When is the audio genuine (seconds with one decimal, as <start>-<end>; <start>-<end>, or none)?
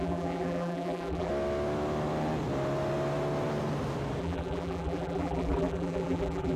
1.3-4.2